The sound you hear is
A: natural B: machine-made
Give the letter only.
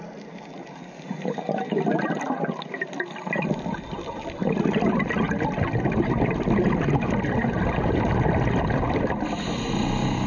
A